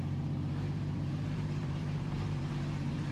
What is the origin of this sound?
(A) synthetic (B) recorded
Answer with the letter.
A